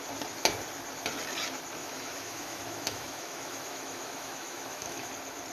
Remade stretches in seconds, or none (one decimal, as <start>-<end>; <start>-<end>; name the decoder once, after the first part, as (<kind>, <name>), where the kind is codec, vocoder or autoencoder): 1.8-5.1 (autoencoder, DAC-VAE)